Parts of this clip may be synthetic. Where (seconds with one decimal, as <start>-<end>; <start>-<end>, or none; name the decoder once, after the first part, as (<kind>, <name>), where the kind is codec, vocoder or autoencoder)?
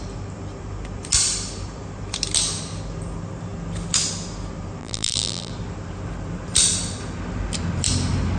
4.8-5.5 (vocoder, BigVGAN v2)